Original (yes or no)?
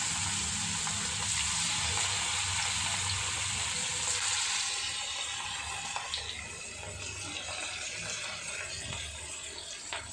yes